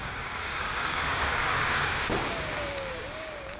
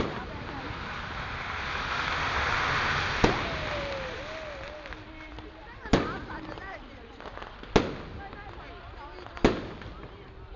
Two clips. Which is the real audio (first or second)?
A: second